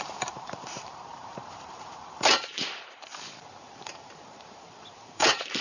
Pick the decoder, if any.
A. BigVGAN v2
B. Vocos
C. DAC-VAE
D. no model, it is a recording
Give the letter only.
A